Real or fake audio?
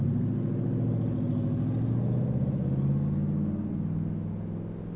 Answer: real